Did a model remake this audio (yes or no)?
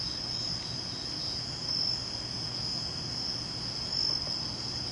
no